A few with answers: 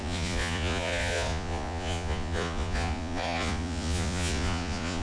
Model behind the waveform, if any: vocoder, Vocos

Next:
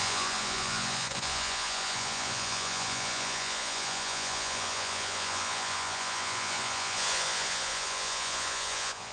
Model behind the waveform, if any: vocoder, Vocos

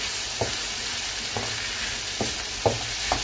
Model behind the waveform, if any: none